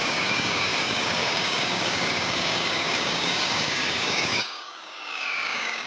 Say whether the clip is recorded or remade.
remade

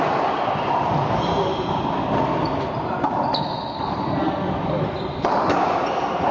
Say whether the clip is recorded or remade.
recorded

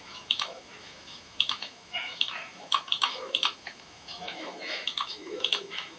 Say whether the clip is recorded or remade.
remade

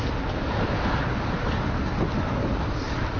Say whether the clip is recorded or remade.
recorded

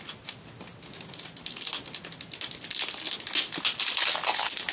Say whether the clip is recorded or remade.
recorded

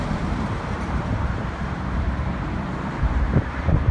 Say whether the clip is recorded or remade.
remade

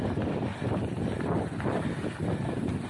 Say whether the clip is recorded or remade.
recorded